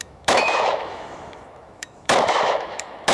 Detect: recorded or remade remade